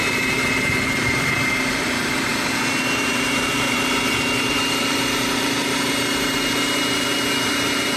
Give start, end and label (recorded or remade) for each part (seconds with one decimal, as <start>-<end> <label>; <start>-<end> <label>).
0.0-2.3 remade; 2.3-2.8 recorded; 2.8-8.0 remade